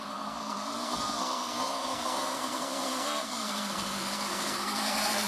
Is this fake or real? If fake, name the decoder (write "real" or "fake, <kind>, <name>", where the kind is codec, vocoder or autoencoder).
fake, codec, SNAC